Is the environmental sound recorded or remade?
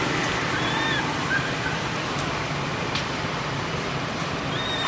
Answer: recorded